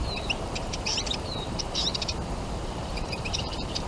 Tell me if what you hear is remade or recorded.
remade